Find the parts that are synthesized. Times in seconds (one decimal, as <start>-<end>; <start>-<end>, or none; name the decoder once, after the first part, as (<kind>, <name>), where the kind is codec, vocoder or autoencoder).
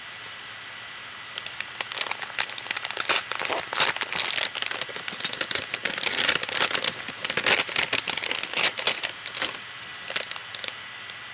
none